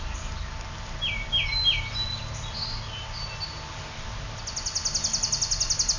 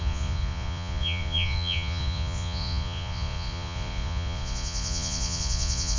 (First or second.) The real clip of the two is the first